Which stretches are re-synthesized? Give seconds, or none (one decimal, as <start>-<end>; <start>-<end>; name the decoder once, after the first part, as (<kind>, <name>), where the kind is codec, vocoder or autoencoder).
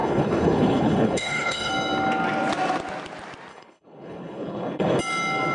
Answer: 0.0-1.7 (codec, HILCodec); 3.5-5.0